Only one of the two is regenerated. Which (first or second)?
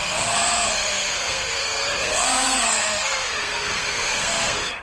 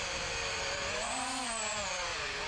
first